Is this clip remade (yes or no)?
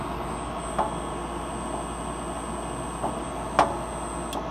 no